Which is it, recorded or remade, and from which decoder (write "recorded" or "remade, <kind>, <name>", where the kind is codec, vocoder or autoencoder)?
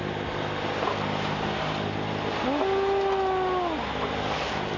recorded